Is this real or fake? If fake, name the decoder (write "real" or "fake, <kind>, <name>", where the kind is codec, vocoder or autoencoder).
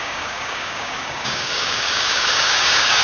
fake, codec, DAC